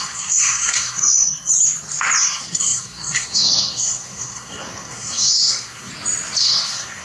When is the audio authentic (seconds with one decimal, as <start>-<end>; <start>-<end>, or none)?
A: 1.5-2.2; 5.9-6.4